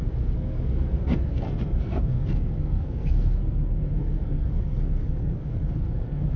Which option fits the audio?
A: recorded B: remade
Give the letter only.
B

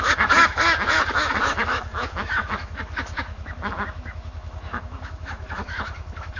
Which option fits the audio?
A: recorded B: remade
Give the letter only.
B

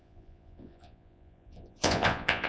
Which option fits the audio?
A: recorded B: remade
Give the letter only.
B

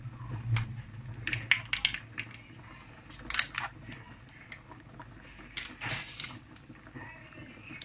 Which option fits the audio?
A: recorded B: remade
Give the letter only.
A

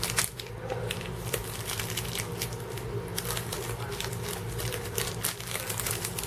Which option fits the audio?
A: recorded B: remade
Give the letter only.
A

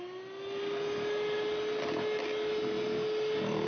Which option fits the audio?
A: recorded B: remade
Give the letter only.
A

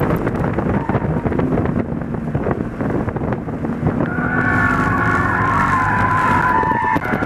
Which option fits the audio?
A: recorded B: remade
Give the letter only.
A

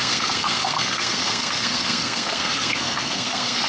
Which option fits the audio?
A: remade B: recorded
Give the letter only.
A